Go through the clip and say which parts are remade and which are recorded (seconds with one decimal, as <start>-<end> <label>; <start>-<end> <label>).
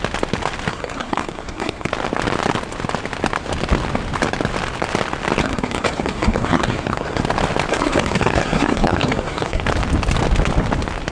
0.0-0.7 recorded; 0.7-1.9 remade; 1.9-5.4 recorded; 5.4-7.2 remade; 7.2-7.7 recorded; 7.7-9.6 remade; 9.6-11.1 recorded